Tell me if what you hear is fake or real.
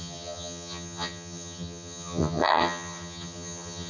fake